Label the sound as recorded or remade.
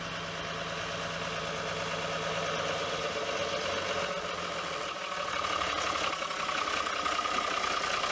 recorded